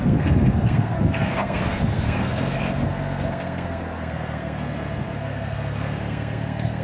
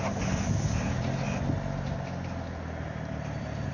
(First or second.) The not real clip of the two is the first